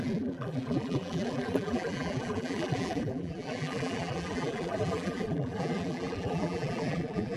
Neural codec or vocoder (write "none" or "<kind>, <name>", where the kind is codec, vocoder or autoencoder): vocoder, BigVGAN v2